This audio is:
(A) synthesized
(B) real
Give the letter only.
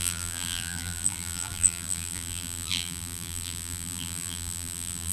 A